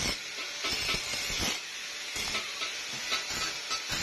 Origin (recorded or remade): recorded